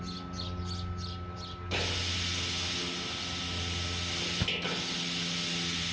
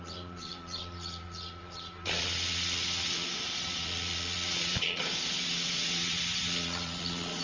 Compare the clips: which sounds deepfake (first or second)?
second